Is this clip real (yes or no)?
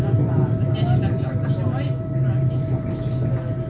yes